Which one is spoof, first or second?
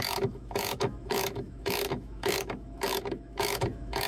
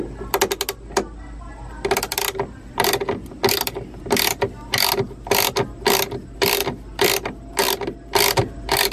first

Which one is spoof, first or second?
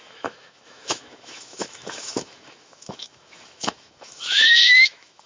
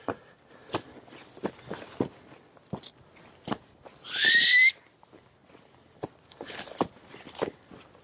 first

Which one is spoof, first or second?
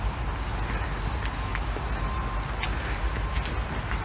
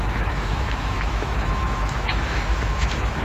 second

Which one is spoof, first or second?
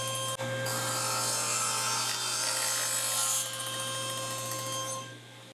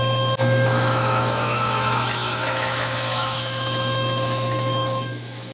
second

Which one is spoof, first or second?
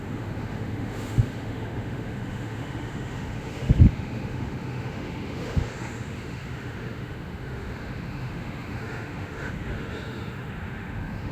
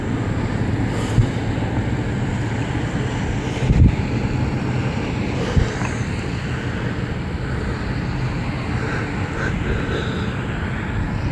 first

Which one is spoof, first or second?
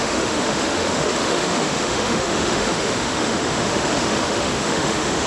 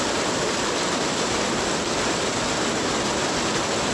first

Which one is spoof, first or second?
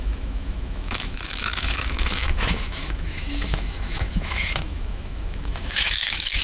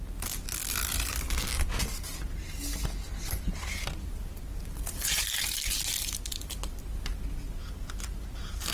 first